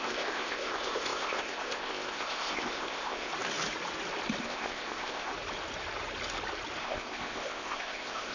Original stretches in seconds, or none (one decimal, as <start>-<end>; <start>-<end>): 3.3-4.4; 5.3-6.8